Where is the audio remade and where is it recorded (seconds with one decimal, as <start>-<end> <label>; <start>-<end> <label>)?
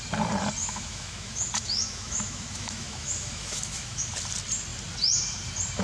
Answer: 0.0-0.6 recorded; 0.6-4.1 remade; 4.1-5.8 recorded